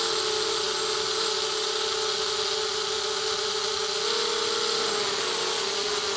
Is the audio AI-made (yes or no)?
no